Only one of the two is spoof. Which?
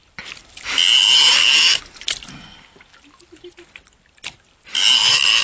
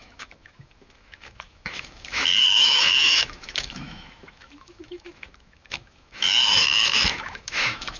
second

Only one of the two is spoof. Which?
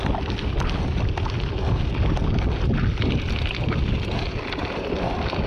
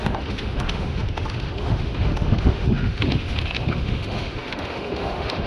second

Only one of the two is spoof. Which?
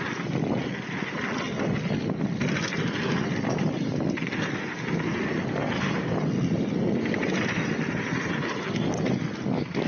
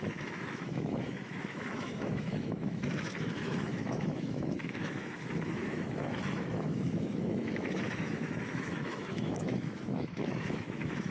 second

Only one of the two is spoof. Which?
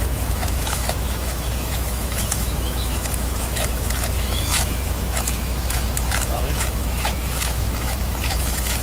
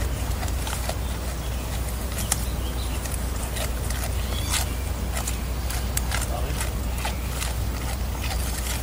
first